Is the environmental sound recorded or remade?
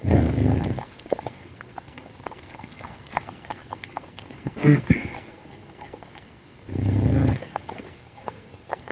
remade